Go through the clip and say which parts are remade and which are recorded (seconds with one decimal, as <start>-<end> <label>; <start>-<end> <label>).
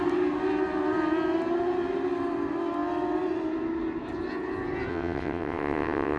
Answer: 0.0-4.9 recorded; 4.9-6.2 remade